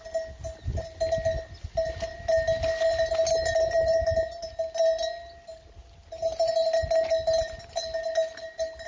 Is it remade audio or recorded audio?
recorded